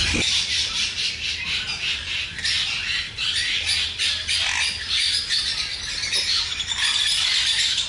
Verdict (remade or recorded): recorded